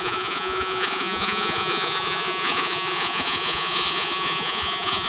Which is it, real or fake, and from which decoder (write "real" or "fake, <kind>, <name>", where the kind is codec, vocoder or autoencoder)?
fake, vocoder, Vocos